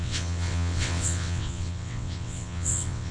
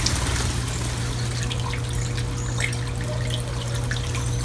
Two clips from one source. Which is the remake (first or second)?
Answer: first